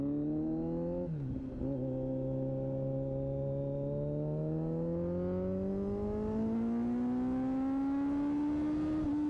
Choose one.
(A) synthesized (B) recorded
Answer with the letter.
B